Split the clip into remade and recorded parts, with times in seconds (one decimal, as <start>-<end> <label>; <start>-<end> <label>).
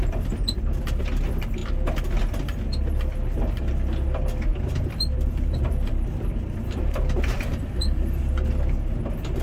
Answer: 0.0-4.5 recorded; 4.5-8.2 remade; 8.2-9.4 recorded